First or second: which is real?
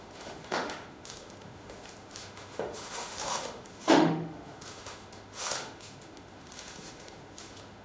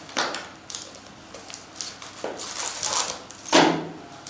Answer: second